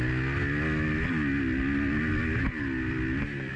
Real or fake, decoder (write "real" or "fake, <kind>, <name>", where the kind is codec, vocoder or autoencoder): real